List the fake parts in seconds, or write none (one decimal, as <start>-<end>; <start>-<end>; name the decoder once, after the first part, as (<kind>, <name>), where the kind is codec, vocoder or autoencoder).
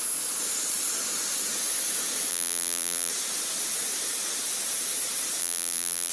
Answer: 2.3-3.1 (vocoder, BigVGAN v2); 5.4-6.1